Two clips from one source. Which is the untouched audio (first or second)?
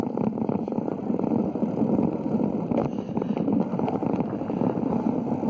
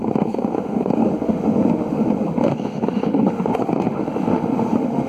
first